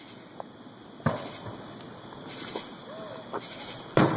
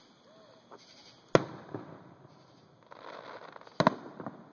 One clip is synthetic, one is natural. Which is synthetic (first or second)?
first